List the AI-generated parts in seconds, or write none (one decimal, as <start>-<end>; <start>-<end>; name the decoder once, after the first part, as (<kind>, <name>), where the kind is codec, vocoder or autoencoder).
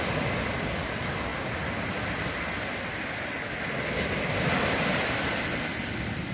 none